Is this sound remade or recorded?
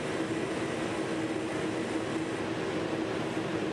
recorded